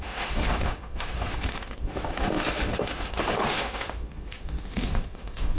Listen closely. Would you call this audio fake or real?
fake